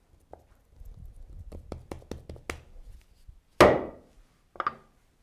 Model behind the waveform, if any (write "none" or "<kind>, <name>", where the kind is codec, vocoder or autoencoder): none